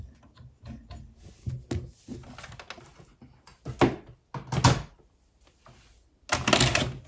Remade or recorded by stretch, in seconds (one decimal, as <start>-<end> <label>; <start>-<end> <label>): 0.0-7.1 recorded